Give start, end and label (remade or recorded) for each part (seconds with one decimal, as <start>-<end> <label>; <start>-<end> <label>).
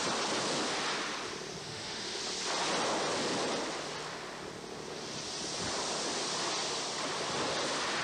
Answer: 0.0-1.6 recorded; 1.6-2.2 remade; 2.2-8.0 recorded